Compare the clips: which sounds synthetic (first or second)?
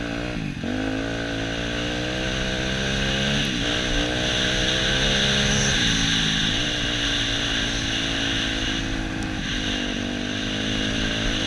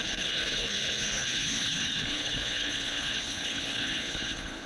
second